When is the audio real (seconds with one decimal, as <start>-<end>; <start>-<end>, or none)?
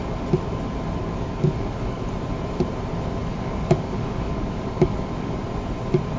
0.0-1.0; 2.0-3.3; 5.4-6.2